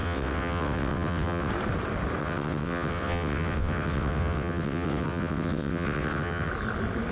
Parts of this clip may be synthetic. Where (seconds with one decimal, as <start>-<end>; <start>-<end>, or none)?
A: 0.0-1.5; 2.2-6.5